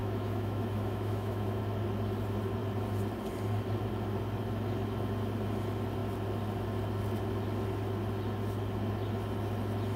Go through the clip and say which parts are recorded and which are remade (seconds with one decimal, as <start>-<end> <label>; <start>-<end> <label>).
0.0-1.6 remade; 1.6-10.0 recorded